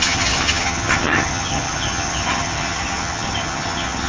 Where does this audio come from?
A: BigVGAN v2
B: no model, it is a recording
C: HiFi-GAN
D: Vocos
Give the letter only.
C